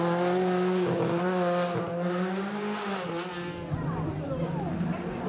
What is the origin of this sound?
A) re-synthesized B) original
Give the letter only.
B